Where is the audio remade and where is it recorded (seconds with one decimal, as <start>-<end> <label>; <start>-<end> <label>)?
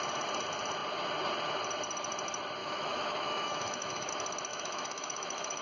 0.0-2.6 recorded; 2.6-4.1 remade; 4.1-4.5 recorded; 4.5-5.6 remade